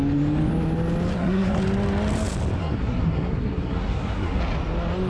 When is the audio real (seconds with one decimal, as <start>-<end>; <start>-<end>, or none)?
0.0-1.1; 1.6-2.6; 4.4-5.1